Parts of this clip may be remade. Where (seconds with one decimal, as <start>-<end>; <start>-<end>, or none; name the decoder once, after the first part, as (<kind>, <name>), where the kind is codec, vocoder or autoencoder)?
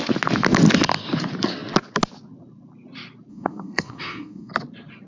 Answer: 3.3-4.5 (codec, SNAC)